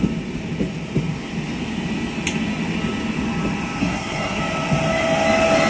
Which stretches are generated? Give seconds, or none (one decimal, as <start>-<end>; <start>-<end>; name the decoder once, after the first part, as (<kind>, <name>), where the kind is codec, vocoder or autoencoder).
3.8-4.4 (codec, SNAC)